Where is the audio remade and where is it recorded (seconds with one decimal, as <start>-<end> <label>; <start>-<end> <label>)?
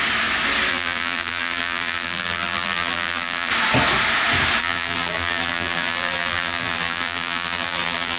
0.0-0.7 recorded; 0.7-3.5 remade; 3.5-4.6 recorded; 4.6-8.2 remade